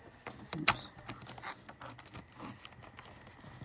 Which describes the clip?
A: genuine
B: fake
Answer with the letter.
A